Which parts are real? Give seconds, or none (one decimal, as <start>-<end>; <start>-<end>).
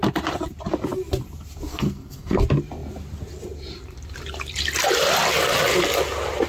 0.0-1.7; 2.4-6.5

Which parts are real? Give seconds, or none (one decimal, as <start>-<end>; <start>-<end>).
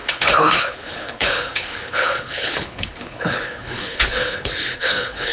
none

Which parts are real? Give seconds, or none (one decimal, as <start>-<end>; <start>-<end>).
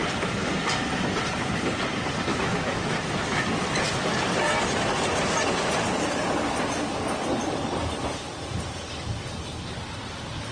0.0-2.3; 3.6-10.5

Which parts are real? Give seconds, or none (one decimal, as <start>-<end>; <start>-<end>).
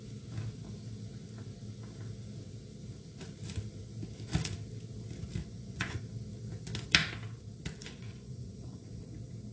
0.0-5.4; 6.0-7.8; 9.0-9.5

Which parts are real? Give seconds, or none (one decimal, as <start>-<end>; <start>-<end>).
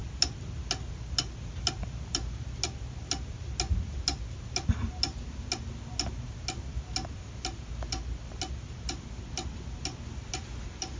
0.0-11.0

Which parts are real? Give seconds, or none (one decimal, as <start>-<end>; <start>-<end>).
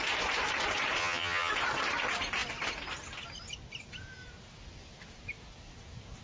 0.0-1.0; 1.5-6.2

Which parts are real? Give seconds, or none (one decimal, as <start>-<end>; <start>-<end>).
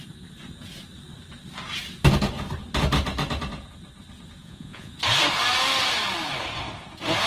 0.0-4.4; 4.9-7.3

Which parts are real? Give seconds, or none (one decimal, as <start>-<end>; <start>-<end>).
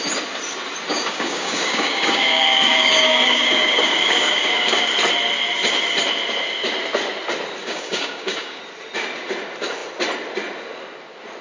0.0-0.9; 4.8-7.6; 8.6-11.4